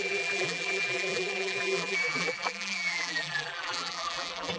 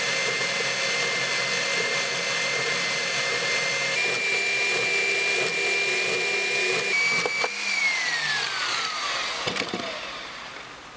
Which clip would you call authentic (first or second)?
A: second